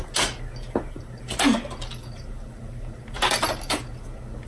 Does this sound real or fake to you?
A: real